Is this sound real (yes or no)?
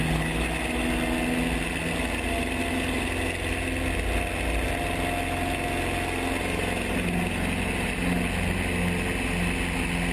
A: yes